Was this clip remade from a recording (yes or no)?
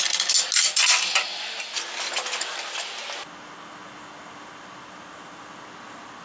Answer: no